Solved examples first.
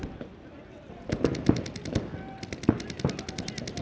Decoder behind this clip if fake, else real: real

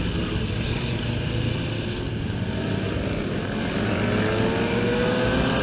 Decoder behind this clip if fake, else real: real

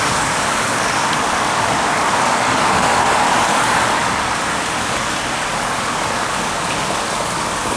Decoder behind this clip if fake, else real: fake, codec, DAC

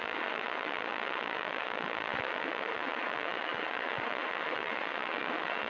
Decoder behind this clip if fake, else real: fake, vocoder, Vocos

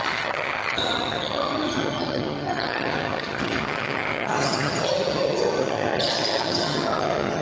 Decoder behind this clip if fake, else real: fake, vocoder, HiFi-GAN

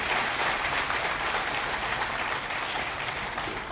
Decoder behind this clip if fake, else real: real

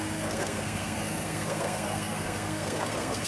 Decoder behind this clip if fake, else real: fake, codec, SNAC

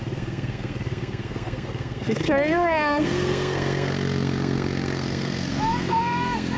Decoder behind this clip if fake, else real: fake, codec, SNAC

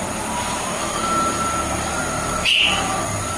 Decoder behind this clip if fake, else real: real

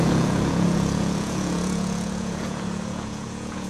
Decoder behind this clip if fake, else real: fake, vocoder, Vocos